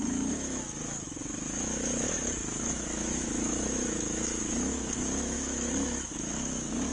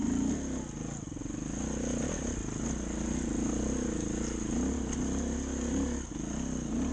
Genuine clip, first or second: second